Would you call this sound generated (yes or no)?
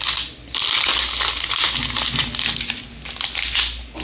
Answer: no